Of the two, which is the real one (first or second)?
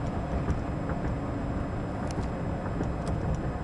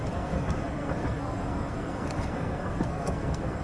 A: first